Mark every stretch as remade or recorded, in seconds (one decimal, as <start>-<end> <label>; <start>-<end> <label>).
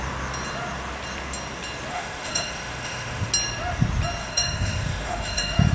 0.0-1.9 recorded; 1.9-3.3 remade; 3.3-4.2 recorded; 4.2-5.7 remade